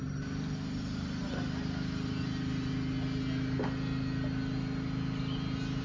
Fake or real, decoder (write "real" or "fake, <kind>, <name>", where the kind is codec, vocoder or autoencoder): real